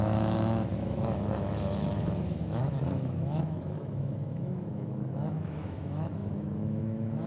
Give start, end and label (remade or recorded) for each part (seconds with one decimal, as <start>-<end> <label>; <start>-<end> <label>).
0.0-7.3 remade